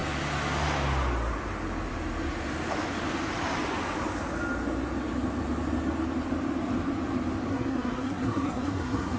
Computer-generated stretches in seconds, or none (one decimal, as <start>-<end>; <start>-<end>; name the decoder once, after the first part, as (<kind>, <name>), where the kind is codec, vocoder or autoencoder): 7.5-9.2 (codec, SNAC)

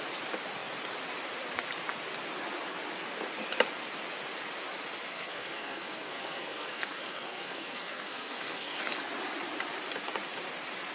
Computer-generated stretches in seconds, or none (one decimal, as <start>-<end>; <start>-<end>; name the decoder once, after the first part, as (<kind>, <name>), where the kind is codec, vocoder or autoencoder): 5.1-8.8 (codec, SNAC)

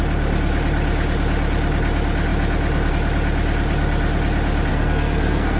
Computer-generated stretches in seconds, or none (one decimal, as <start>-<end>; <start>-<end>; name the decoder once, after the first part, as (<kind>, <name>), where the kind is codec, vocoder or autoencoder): 4.7-5.6 (codec, SNAC)

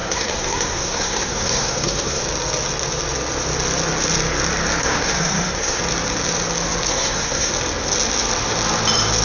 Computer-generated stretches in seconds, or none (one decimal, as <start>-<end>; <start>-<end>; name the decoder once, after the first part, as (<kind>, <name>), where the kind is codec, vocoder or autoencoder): 0.0-2.2 (codec, SNAC); 4.8-5.8; 6.9-7.5

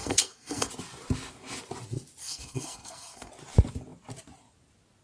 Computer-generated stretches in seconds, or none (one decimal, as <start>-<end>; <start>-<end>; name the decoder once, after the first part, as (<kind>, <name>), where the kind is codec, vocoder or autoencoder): 0.0-0.7 (codec, SNAC); 2.2-3.3

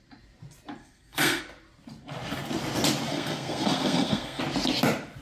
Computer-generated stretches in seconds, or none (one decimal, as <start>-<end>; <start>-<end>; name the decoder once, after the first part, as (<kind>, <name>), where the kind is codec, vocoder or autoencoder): 0.8-1.4 (codec, SNAC); 3.1-4.4

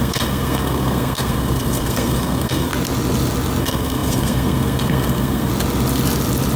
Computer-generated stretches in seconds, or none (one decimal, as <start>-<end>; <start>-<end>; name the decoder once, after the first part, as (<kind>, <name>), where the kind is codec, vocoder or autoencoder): 0.0-2.7 (codec, SNAC); 3.6-5.5

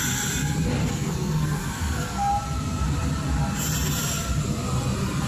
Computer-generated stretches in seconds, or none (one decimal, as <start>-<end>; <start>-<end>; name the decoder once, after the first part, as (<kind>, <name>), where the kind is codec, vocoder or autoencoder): 0.8-2.3 (codec, SNAC)